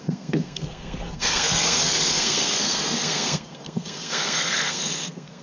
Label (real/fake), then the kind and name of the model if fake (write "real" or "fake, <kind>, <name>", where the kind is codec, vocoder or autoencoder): fake, codec, SNAC